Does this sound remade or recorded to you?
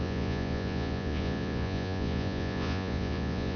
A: remade